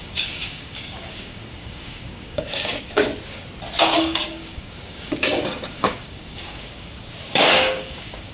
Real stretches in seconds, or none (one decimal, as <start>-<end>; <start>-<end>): 3.1-3.8